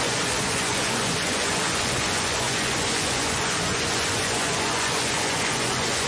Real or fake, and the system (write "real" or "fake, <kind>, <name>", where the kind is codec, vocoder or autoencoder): fake, vocoder, Vocos